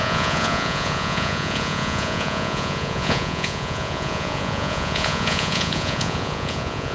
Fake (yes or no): yes